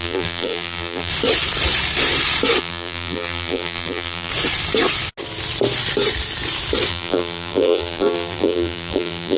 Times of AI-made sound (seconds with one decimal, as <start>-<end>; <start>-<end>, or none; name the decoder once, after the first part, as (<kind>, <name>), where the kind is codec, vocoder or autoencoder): 0.0-1.1 (vocoder, BigVGAN v2); 2.6-4.3; 6.9-9.4